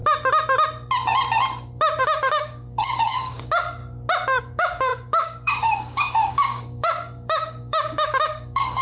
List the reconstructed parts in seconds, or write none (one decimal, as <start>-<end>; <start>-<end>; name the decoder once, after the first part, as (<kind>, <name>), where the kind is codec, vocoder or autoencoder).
2.0-3.8 (codec, DAC); 4.4-8.8